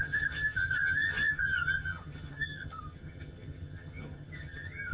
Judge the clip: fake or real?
fake